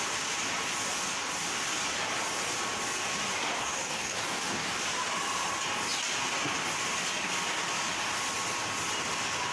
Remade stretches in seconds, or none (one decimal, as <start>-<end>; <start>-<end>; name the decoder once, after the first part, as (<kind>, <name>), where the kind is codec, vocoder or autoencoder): 3.6-4.8 (codec, DAC)